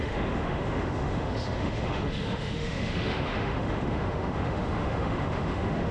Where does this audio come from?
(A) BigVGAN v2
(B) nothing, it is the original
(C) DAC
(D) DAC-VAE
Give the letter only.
D